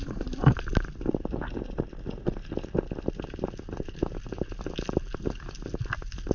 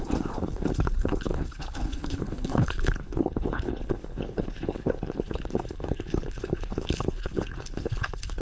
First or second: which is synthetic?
second